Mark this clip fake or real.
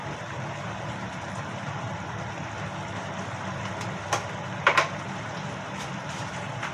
fake